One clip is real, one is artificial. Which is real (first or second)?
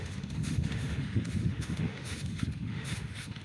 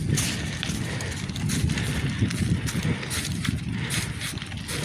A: second